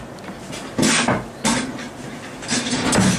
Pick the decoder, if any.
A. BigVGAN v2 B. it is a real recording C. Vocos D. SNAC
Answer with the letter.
B